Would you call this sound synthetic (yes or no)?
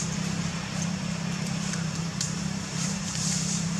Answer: yes